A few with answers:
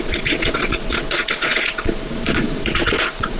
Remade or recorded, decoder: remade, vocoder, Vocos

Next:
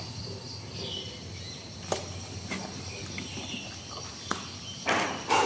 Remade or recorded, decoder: recorded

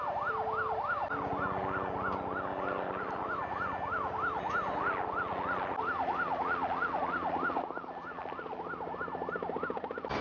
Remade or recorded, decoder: recorded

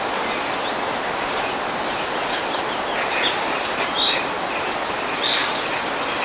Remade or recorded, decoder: remade, vocoder, BigVGAN v2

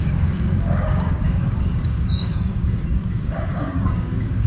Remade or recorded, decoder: remade, codec, DAC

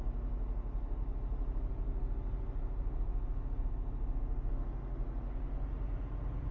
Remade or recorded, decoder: recorded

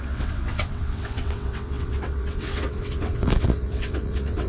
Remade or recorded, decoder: remade, vocoder, WaveNeXt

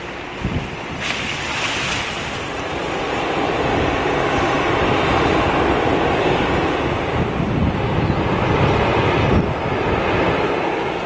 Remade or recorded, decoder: recorded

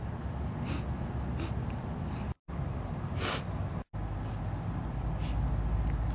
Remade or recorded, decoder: recorded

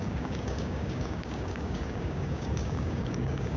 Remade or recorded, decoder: remade, codec, DAC